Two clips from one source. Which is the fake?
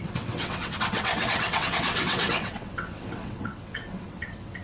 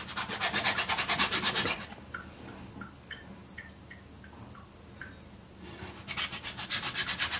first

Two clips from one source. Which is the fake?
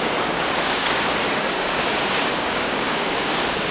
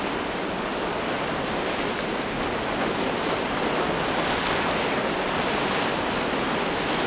first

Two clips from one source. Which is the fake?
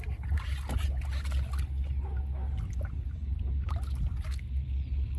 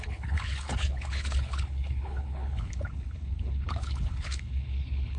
second